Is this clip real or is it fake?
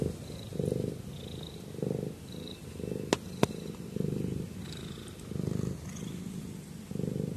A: real